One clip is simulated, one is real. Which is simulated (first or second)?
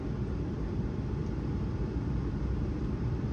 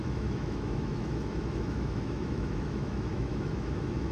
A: second